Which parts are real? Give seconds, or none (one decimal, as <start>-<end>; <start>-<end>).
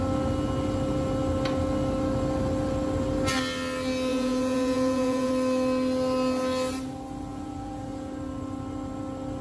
0.0-4.1; 5.3-7.3; 8.1-9.4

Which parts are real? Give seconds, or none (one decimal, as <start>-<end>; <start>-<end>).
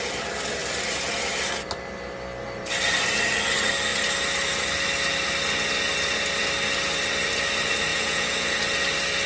0.0-7.9; 8.6-9.3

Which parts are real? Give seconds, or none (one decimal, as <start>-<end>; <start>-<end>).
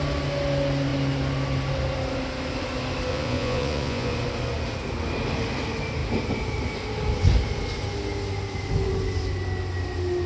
0.0-3.1; 4.1-10.3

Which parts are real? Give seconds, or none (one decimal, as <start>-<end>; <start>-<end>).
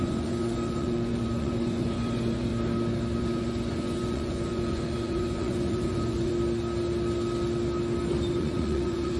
2.5-3.2; 6.3-8.4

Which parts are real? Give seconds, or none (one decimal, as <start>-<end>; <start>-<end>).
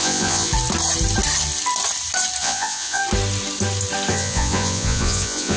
0.5-2.4; 3.0-4.1